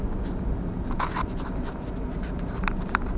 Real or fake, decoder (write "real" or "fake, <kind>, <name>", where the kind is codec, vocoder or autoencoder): real